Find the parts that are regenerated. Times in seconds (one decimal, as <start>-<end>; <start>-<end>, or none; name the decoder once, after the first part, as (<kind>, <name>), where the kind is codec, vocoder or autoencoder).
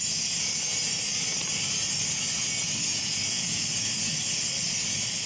2.9-3.6 (vocoder, Vocos)